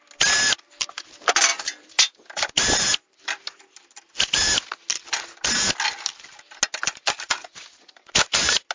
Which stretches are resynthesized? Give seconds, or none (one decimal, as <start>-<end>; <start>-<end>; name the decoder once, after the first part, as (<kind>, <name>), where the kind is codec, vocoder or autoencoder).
none